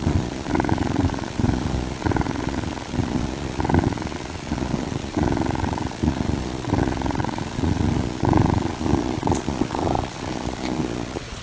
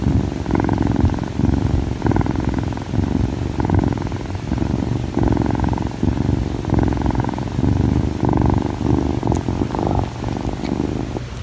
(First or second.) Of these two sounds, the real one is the second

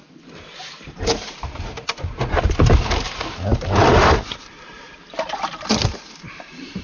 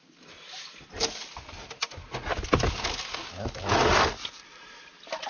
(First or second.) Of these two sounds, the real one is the second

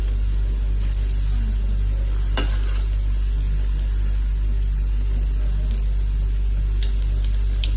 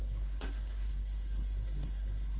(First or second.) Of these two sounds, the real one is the first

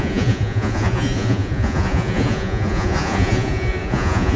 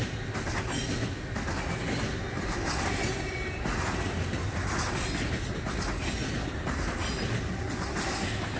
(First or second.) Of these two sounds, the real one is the second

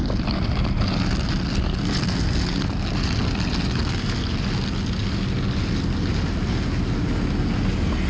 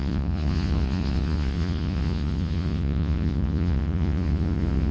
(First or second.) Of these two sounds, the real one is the first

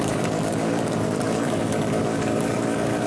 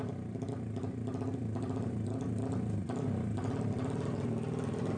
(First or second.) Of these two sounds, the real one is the second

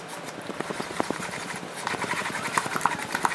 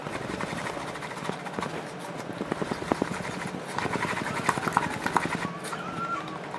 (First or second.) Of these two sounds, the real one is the second